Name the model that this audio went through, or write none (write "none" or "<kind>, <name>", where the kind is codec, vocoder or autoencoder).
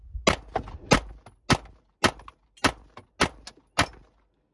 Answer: none